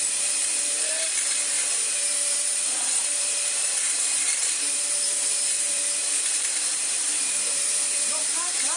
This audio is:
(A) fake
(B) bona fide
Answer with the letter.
A